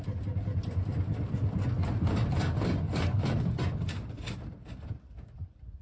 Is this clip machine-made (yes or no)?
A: no